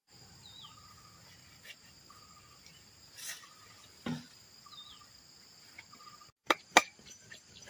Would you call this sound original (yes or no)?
yes